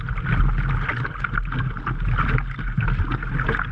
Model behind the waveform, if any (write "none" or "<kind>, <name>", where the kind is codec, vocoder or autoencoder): none